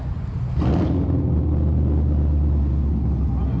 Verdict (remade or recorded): recorded